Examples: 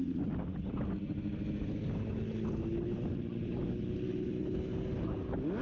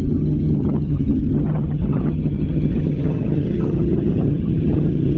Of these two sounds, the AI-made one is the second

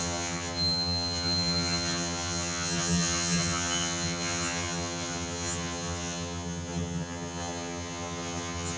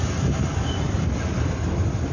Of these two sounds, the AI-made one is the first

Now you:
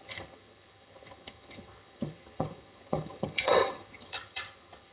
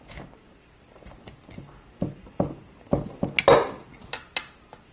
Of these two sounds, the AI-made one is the first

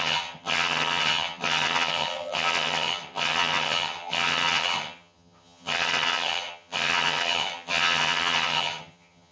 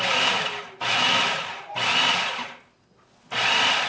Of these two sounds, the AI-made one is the first